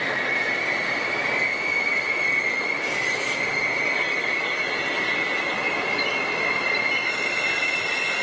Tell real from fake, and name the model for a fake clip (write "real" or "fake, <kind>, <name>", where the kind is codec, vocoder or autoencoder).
real